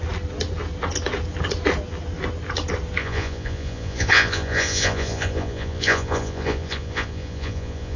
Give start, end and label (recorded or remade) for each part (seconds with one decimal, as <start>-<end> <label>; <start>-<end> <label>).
0.0-3.0 recorded; 3.0-8.0 remade